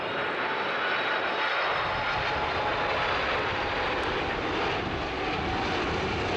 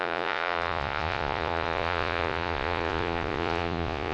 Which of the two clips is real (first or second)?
first